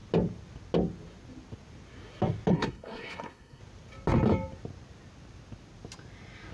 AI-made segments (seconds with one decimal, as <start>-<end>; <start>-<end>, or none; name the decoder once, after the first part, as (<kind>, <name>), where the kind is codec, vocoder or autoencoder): 2.5-3.6 (codec, SNAC)